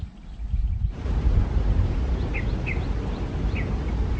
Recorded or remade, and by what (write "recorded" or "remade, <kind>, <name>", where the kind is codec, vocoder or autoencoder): recorded